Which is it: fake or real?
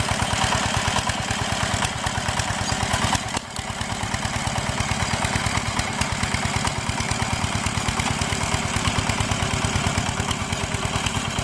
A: real